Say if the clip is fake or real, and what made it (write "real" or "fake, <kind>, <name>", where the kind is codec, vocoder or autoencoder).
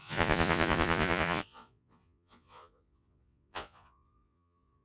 fake, vocoder, Vocos